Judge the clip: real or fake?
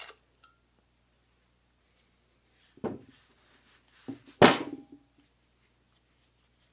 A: real